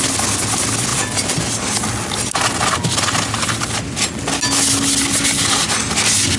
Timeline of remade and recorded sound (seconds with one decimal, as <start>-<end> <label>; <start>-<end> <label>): 0.0-6.4 recorded